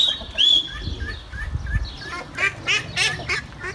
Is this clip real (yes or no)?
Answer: yes